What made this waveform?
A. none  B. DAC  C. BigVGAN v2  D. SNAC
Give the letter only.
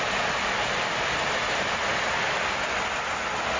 A